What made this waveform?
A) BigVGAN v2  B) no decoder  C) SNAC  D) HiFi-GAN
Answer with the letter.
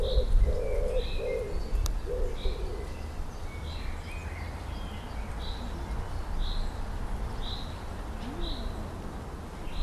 B